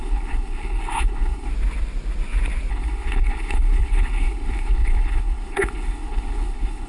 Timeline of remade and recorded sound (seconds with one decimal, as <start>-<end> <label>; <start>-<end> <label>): 0.0-1.5 remade; 1.5-2.7 recorded; 2.7-6.9 remade